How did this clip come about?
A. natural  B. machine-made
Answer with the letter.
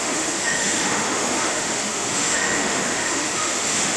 B